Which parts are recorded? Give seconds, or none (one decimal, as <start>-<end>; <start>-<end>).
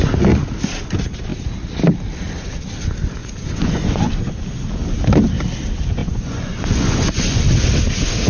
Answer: 0.0-3.2; 4.1-6.0; 7.4-8.3